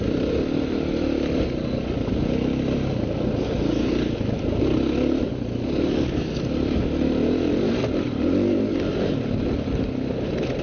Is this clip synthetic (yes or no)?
no